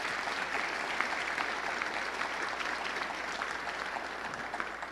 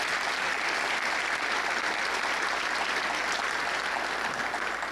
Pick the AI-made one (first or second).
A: first